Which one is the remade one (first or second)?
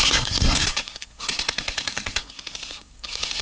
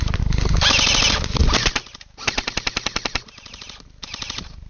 first